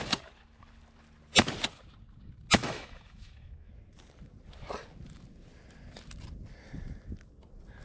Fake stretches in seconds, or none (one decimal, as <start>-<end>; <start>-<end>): 2.6-3.7